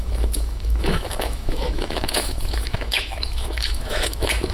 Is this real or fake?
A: fake